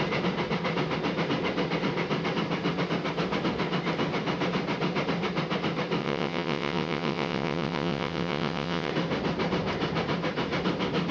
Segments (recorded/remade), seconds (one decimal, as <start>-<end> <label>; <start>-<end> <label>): 0.0-6.0 recorded; 6.0-8.9 remade; 8.9-11.1 recorded